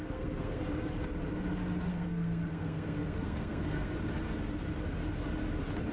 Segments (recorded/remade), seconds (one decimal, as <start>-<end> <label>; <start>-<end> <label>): 0.0-0.6 remade; 0.6-1.9 recorded; 1.9-3.9 remade; 3.9-5.9 recorded